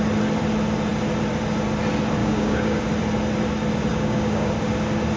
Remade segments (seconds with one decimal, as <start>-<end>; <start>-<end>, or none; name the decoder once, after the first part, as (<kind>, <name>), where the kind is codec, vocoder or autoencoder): 2.2-2.8 (codec, DAC); 3.9-4.5